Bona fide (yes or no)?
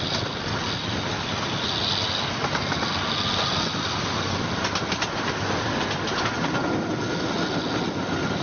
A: yes